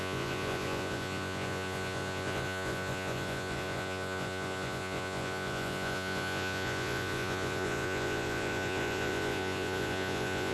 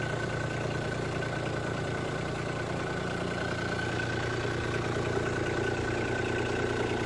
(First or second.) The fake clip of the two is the first